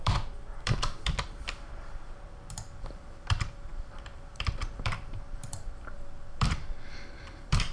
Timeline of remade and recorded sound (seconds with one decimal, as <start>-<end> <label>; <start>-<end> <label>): 0.0-7.7 remade